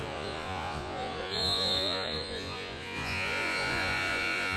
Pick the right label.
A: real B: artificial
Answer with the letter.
B